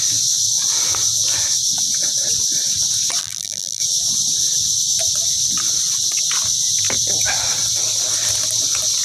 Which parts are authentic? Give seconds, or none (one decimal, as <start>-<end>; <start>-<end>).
0.0-3.2; 3.8-9.0